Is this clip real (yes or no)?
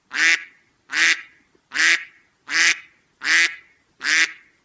yes